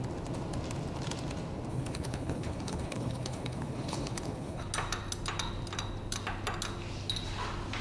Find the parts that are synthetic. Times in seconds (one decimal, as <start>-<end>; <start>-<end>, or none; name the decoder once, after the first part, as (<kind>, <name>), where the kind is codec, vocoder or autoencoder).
1.7-4.7 (codec, HILCodec)